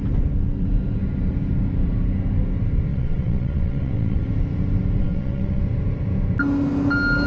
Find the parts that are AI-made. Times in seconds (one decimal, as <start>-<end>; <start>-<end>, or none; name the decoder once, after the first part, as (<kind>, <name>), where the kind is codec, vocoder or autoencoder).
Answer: 2.9-4.3 (vocoder, WaveNeXt); 5.0-5.6

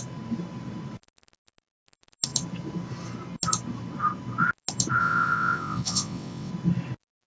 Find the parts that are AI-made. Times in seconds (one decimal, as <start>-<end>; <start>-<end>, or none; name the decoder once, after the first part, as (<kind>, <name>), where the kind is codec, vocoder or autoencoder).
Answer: 5.0-6.5 (vocoder, WaveNeXt)

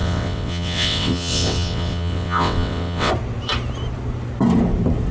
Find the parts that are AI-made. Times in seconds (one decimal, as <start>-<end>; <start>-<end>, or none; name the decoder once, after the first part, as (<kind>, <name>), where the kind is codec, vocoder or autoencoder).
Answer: 0.0-3.1 (vocoder, WaveNeXt)

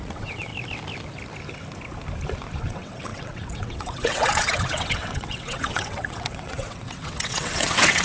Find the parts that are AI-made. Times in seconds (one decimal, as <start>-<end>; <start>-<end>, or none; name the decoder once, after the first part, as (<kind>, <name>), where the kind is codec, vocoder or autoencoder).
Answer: 0.0-0.5 (vocoder, WaveNeXt); 2.6-8.0